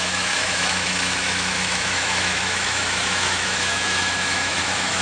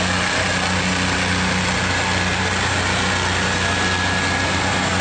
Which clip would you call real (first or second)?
second